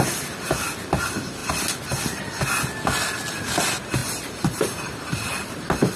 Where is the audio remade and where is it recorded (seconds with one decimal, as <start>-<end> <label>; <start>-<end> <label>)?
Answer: 0.0-4.0 recorded; 4.0-6.0 remade